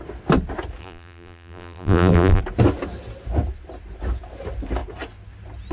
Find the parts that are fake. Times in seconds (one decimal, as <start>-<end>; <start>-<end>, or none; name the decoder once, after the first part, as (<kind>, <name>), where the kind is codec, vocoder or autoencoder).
0.8-2.4 (vocoder, BigVGAN v2)